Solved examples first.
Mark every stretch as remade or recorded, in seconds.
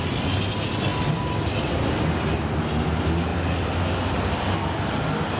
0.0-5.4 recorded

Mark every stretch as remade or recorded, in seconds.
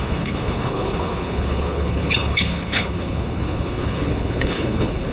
0.0-5.1 remade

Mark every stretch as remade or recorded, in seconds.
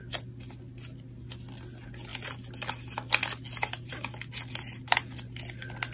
0.0-5.9 recorded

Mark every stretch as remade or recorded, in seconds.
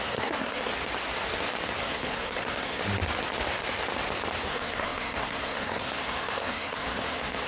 0.0-0.7 remade; 0.7-1.8 recorded; 1.8-2.8 remade; 2.8-4.4 recorded; 4.4-7.5 remade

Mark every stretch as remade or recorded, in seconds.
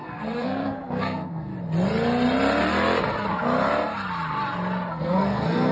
0.0-1.5 remade; 1.5-4.9 recorded; 4.9-5.7 remade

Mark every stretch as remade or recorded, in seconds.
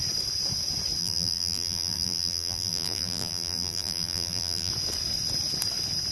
0.0-1.0 recorded; 1.0-4.7 remade; 4.7-6.1 recorded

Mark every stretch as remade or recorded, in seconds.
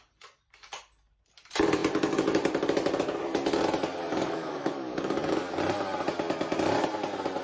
0.0-4.1 recorded; 4.1-5.6 remade; 5.6-7.4 recorded